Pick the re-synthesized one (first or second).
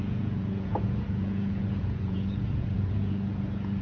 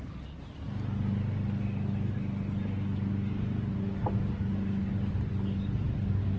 first